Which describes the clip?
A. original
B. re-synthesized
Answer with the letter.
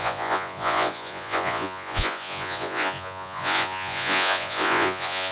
B